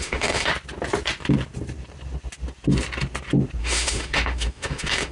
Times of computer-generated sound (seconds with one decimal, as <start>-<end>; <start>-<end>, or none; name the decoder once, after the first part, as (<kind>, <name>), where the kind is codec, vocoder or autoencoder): 0.0-0.5 (autoencoder, DAC-VAE); 3.6-5.1